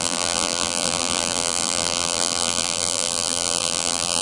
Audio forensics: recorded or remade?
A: remade